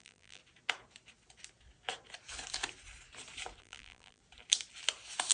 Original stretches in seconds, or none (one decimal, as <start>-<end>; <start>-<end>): 0.4-3.6; 4.2-5.3